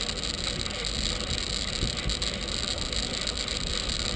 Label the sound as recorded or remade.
recorded